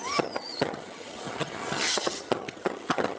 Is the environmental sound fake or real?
fake